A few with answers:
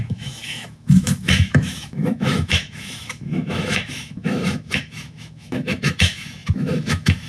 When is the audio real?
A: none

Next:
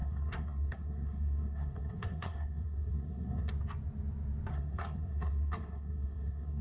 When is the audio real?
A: 3.5-4.5

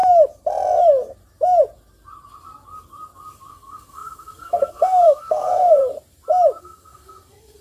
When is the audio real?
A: 0.0-3.5; 5.8-6.6

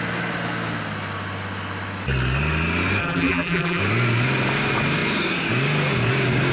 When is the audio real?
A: 0.0-3.0; 3.8-6.5

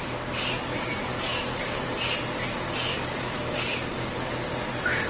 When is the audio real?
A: 0.0-1.1; 1.9-2.9; 4.3-5.1